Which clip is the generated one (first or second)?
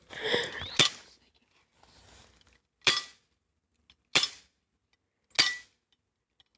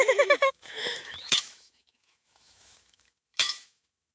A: second